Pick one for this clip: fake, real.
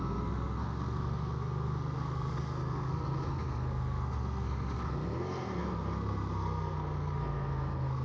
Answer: fake